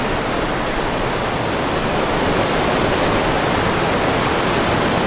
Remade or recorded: recorded